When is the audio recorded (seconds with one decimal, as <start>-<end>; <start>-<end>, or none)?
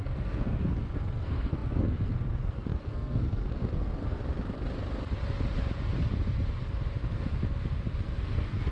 4.2-8.0